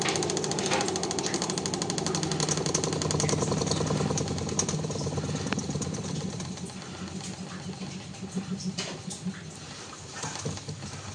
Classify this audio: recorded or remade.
recorded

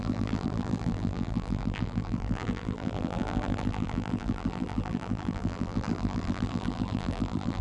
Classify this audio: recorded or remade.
remade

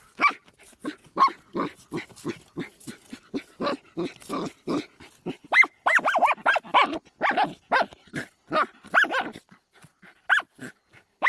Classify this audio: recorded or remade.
recorded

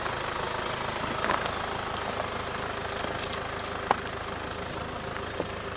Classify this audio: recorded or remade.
recorded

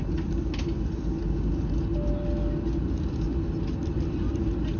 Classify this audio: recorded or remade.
recorded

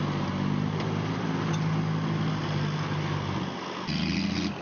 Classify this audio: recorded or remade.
recorded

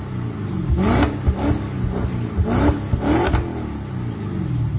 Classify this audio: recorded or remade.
recorded